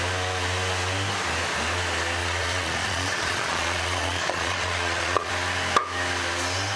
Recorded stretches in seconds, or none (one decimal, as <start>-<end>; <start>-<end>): 0.0-2.2; 5.3-6.8